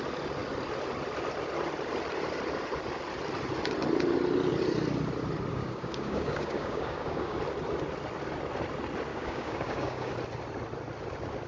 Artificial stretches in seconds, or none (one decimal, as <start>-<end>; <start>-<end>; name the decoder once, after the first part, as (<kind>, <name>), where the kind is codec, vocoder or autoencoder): 5.5-7.4 (codec, DAC); 9.1-10.1